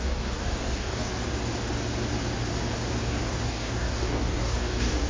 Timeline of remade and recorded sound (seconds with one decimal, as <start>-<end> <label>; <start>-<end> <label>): 0.0-1.1 remade; 1.1-3.0 recorded; 3.0-5.1 remade